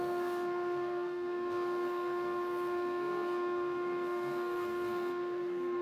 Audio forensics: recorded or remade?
remade